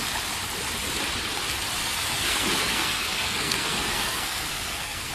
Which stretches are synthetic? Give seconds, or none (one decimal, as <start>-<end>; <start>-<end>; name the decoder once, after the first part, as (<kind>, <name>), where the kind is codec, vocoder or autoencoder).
1.8-5.1 (codec, SNAC)